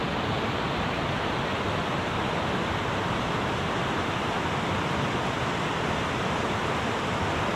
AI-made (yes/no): no